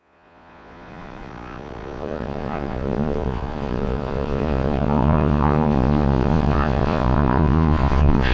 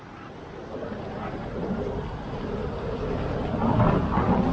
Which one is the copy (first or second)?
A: first